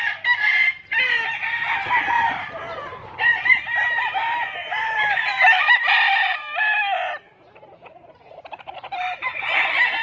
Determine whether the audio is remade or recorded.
recorded